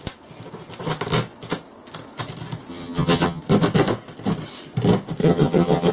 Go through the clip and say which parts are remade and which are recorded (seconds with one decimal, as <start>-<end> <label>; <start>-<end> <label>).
0.0-2.7 recorded; 2.7-3.4 remade; 3.4-5.2 recorded; 5.2-5.9 remade